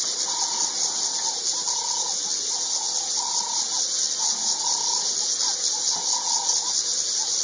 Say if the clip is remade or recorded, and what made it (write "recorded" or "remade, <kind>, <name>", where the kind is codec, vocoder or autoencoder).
recorded